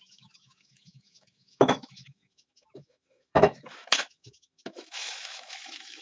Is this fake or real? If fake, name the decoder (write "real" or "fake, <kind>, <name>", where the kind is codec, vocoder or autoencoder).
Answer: fake, autoencoder, DAC-VAE